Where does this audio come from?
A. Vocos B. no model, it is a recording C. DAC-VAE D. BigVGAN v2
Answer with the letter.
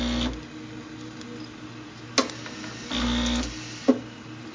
B